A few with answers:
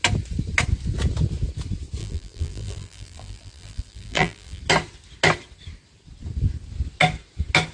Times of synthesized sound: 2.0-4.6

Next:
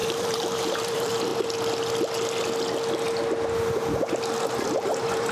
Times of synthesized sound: 0.0-1.3; 4.5-5.3

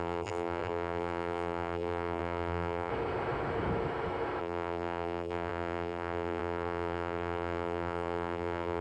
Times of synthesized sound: 0.0-2.9; 4.4-8.8

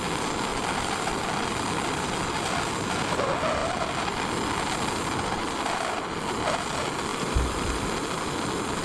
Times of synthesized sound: 0.5-2.4; 3.6-5.6; 7.1-7.8

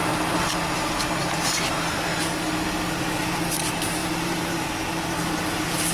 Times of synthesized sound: 0.0-0.5; 1.2-2.0; 4.0-4.7

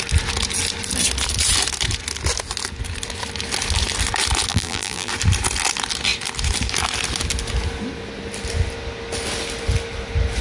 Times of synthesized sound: 4.5-5.1

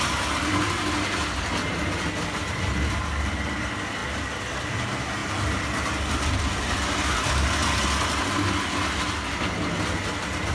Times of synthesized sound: none

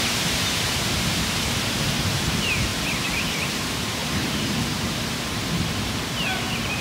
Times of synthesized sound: 0.0-2.7; 3.5-6.8